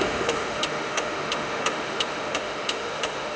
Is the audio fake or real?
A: fake